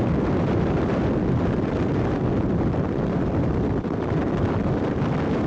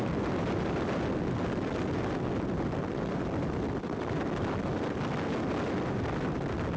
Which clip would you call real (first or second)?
second